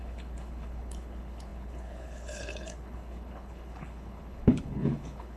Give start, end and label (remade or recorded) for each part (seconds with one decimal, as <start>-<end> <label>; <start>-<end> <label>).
0.0-5.4 remade